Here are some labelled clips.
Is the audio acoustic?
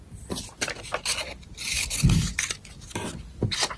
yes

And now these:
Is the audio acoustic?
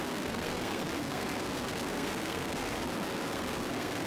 no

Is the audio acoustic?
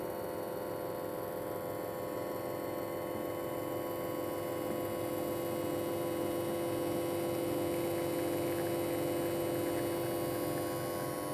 yes